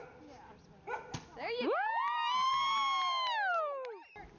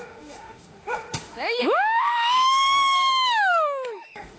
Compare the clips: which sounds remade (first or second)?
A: second